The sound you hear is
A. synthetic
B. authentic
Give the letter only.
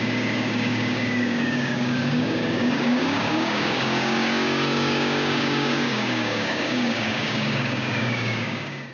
A